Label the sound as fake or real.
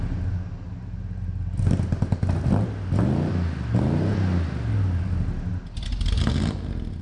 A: real